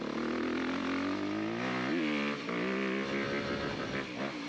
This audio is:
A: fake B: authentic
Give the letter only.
B